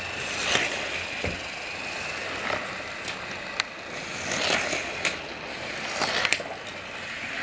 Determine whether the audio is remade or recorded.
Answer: recorded